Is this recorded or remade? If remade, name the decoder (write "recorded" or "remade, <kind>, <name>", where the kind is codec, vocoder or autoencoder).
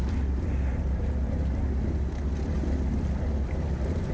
recorded